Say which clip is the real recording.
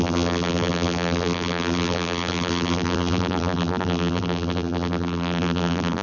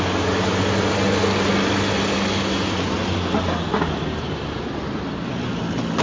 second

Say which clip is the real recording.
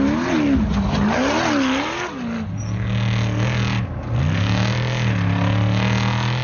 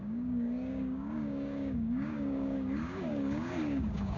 first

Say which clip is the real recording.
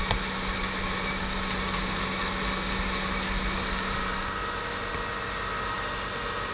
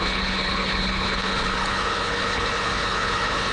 first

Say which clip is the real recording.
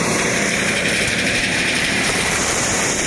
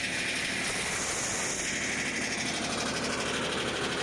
second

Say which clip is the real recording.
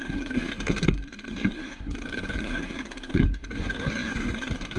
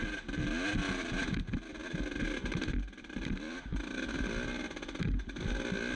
second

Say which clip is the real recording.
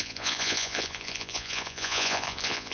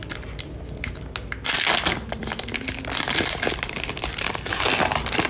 second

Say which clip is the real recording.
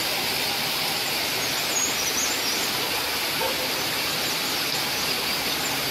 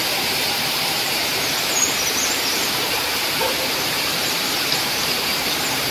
first